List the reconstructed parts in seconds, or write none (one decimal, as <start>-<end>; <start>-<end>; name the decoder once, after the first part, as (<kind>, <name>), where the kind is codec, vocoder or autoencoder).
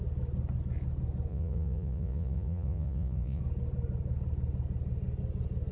1.3-3.4 (vocoder, Vocos)